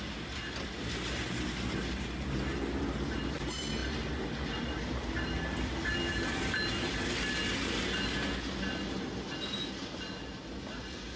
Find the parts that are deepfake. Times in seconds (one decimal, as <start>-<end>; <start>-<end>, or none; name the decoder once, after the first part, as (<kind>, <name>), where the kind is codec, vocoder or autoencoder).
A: none